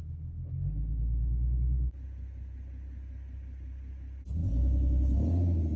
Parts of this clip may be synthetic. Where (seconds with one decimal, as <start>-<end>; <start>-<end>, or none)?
none